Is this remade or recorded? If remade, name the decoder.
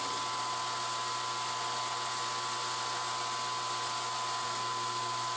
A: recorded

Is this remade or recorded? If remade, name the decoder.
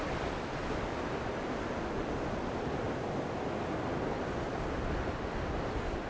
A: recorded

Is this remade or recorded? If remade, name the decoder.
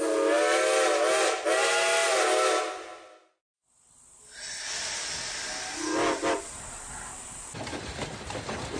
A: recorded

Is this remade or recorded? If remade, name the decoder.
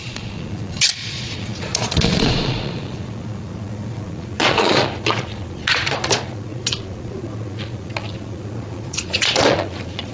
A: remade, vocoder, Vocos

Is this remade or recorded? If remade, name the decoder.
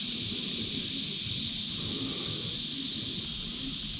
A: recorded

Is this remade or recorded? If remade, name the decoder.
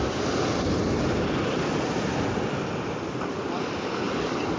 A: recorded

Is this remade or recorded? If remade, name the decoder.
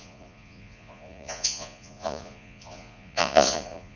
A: remade, vocoder, Vocos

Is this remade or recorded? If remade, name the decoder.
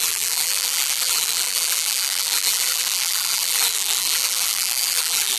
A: remade, vocoder, BigVGAN v2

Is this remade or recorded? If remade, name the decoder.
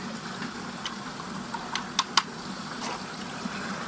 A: recorded